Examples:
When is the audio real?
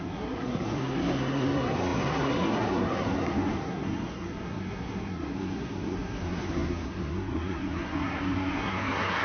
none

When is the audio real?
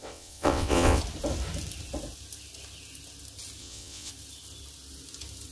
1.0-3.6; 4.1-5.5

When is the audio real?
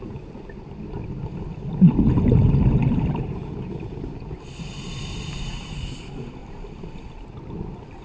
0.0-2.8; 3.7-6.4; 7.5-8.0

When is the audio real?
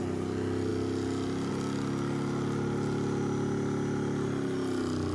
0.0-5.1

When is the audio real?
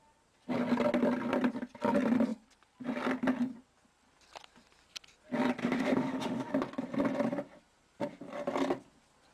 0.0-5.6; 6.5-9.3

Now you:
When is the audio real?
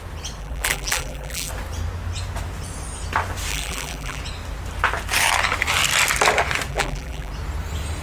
0.0-0.4; 1.5-3.5; 4.2-6.7; 7.3-8.0